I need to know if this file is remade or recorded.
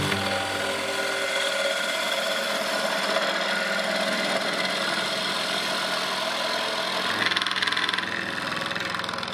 recorded